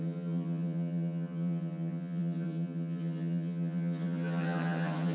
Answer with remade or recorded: remade